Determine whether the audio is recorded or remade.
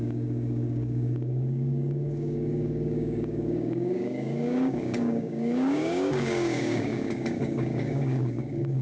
remade